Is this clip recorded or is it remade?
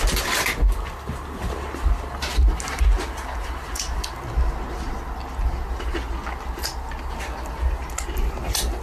recorded